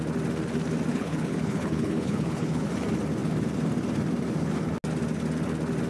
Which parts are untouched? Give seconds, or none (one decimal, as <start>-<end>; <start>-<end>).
0.0-0.9; 2.7-5.9